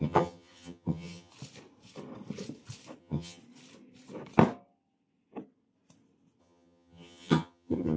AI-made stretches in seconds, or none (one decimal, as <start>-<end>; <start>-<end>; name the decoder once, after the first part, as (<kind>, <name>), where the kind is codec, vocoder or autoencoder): 0.0-1.3 (vocoder, HiFi-GAN); 3.0-3.4; 6.4-8.0